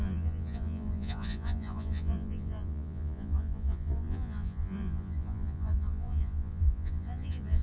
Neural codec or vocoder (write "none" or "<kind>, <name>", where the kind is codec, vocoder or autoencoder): vocoder, Vocos